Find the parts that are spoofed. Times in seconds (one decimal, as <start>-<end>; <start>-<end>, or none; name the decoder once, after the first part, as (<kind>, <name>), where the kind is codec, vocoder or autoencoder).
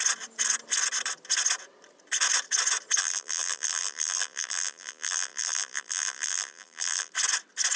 3.0-7.1 (vocoder, BigVGAN v2)